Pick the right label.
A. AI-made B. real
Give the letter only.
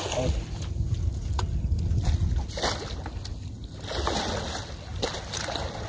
B